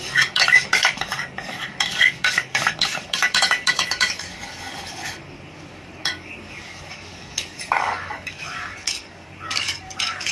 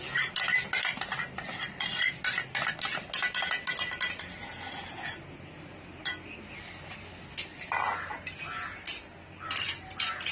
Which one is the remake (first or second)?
first